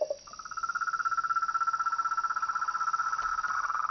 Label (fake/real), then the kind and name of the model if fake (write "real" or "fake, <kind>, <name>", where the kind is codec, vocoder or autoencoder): real